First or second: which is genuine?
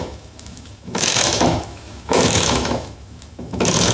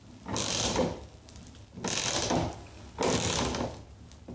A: second